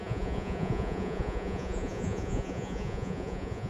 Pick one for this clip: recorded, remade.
remade